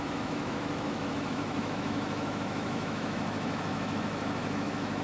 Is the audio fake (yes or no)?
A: yes